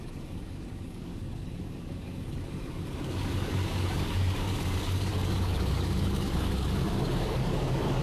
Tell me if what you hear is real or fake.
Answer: fake